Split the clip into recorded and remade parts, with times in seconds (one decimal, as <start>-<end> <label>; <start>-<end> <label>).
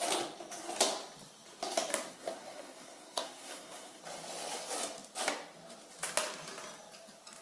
0.0-2.1 recorded; 2.1-4.0 remade; 4.0-7.4 recorded